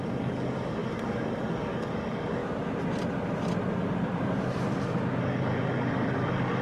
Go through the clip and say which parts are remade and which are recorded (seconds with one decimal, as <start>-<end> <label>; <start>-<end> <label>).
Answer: 0.0-2.4 remade; 2.4-5.2 recorded; 5.2-6.6 remade